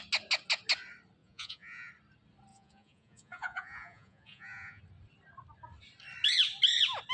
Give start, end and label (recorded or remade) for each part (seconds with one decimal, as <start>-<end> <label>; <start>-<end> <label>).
0.0-1.2 recorded; 1.2-1.9 remade; 1.9-2.5 recorded; 2.5-4.8 remade; 4.8-7.1 recorded